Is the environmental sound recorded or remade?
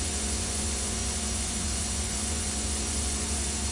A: remade